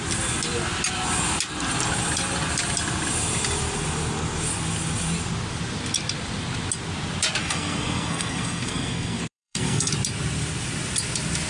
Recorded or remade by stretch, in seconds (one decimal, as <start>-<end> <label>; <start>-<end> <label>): 0.0-7.4 recorded; 7.4-9.9 remade; 9.9-11.5 recorded